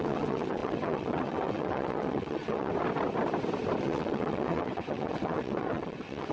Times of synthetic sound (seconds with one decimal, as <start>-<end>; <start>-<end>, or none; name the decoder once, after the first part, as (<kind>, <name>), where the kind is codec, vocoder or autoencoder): 0.0-2.7 (vocoder, WaveNeXt); 3.8-6.3